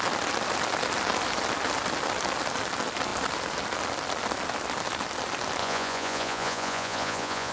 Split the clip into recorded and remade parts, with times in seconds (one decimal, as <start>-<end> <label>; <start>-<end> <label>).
0.0-5.6 recorded; 5.6-7.5 remade

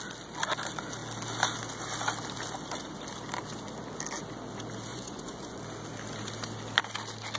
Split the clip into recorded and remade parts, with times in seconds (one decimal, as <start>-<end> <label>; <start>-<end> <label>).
0.0-4.9 recorded; 4.9-5.6 remade; 5.6-7.4 recorded